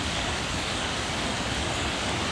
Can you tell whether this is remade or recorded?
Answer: remade